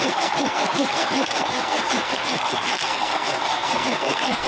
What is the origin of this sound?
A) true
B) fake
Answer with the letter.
B